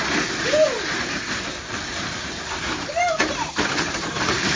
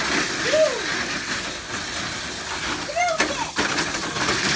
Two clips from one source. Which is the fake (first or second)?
first